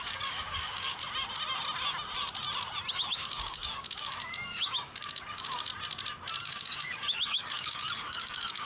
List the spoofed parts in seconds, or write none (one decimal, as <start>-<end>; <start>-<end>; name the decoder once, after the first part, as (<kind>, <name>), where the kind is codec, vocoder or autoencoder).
0.0-1.0 (codec, DAC); 2.9-5.7; 6.4-8.7